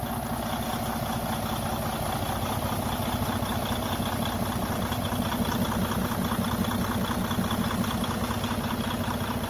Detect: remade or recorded recorded